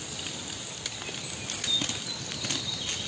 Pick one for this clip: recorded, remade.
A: recorded